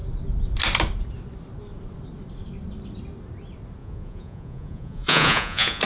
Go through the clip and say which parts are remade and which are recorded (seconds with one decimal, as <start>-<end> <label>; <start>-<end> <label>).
0.0-3.8 recorded; 3.8-5.8 remade